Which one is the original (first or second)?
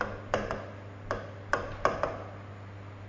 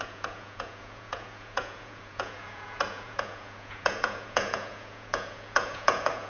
first